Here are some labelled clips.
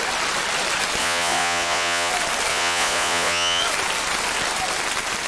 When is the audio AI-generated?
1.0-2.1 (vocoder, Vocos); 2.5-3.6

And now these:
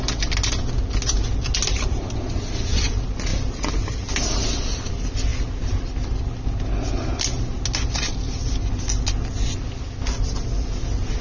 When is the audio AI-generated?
none

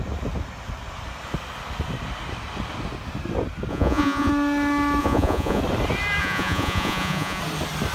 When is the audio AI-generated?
3.7-4.3 (vocoder, Vocos); 5.0-5.6; 6.2-7.4

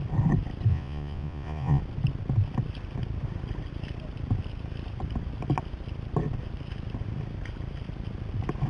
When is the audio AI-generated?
0.7-1.8 (vocoder, Vocos)

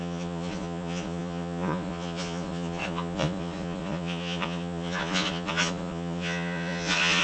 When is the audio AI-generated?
0.0-7.2 (vocoder, Vocos)

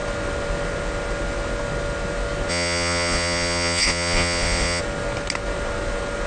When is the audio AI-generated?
2.5-4.8 (vocoder, Vocos)

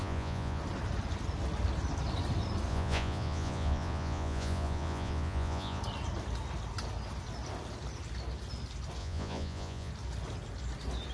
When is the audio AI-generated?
0.0-0.6 (vocoder, Vocos); 2.7-5.8; 9.0-9.9

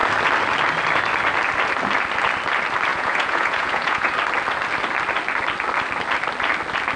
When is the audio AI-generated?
2.9-4.1 (vocoder, Vocos)